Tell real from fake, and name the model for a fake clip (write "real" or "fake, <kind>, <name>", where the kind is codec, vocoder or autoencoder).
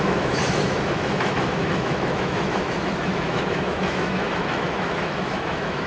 fake, autoencoder, DAC-VAE